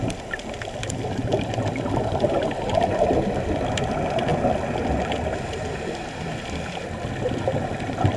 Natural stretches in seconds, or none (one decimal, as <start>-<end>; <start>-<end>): 0.0-8.2